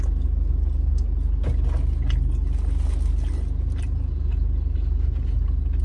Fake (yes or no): no